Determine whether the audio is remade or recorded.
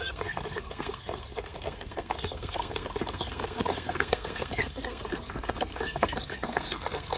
remade